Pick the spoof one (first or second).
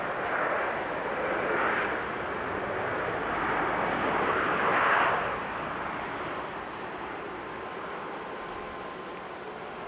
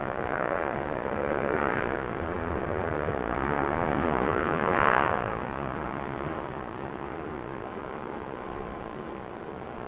second